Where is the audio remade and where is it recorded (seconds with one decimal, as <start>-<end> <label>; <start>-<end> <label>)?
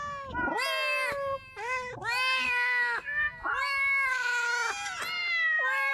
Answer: 0.0-5.9 recorded